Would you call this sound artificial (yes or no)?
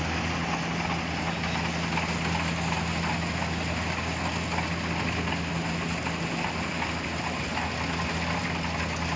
no